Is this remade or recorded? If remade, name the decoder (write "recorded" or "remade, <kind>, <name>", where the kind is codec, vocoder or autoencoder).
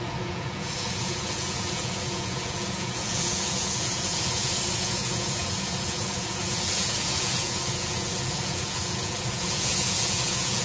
remade, vocoder, Vocos